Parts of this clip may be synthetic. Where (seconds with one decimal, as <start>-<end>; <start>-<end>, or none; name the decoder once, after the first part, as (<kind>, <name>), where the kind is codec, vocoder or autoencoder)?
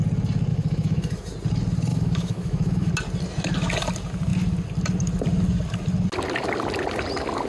0.5-1.2 (autoencoder, DAC-VAE); 1.9-2.9